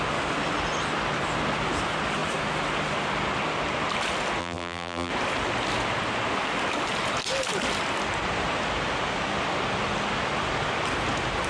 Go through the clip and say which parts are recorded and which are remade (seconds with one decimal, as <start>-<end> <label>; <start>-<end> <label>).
0.0-4.4 recorded; 4.4-5.1 remade; 5.1-11.5 recorded